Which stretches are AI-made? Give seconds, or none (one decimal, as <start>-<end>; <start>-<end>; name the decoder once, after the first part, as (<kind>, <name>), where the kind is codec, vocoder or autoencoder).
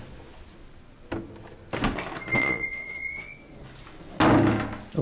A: 2.3-3.4 (vocoder, Vocos)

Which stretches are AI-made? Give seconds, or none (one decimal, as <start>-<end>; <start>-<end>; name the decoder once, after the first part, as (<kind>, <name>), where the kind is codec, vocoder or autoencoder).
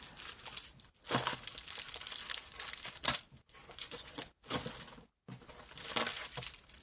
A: 3.6-4.2 (vocoder, Vocos)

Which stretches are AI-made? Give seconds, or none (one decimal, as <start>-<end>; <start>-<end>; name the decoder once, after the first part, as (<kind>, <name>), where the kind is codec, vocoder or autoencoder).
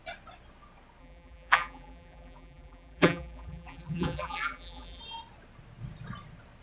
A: 1.0-5.0 (vocoder, BigVGAN v2)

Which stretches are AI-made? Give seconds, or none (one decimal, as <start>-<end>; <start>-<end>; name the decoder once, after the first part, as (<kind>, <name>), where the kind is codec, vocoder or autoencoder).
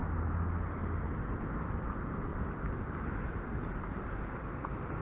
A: none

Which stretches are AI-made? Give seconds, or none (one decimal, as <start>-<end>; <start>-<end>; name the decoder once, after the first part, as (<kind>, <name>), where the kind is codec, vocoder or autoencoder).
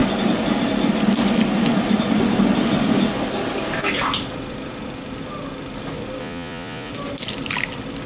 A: 6.2-6.9 (vocoder, Vocos)